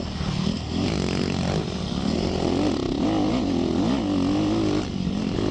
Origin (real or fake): real